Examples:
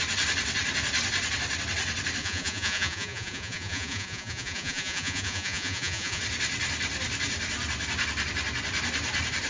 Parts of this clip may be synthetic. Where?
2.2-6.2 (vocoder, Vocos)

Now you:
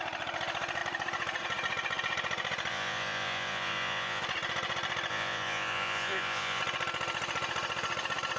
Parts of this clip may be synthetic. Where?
2.7-4.2 (vocoder, Vocos); 5.1-6.6

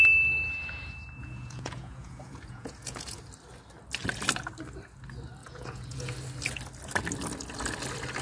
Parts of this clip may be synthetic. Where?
1.2-3.2 (vocoder, Vocos); 5.4-6.1

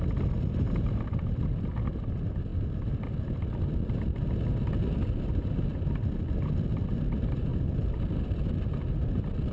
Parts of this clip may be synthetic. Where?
none